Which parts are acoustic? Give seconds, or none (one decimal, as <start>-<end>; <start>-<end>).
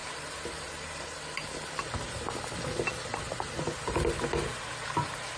0.0-5.4